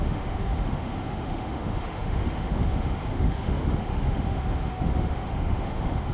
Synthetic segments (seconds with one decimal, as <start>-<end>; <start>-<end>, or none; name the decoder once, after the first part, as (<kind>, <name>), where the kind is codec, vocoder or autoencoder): 0.0-6.1 (autoencoder, DAC-VAE)